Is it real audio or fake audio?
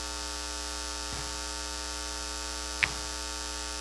real